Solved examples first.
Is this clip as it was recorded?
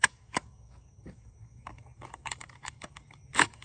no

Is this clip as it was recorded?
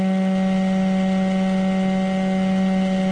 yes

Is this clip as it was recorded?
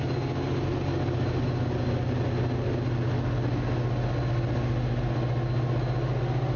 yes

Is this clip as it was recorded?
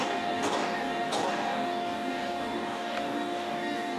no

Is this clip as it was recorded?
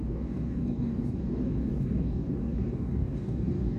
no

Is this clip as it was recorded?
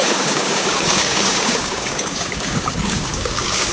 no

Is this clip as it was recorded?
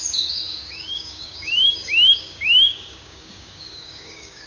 no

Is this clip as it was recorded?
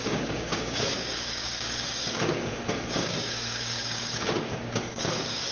no